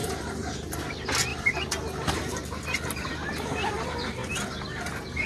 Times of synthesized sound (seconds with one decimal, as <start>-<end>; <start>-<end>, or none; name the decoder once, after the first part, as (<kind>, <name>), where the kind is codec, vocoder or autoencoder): 0.0-0.9 (vocoder, BigVGAN v2); 1.3-3.8